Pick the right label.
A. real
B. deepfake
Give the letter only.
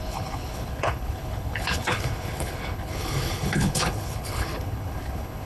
B